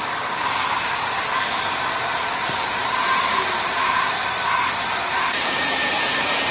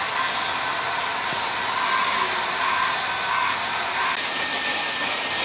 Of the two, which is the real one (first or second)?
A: second